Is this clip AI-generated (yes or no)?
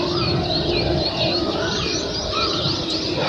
no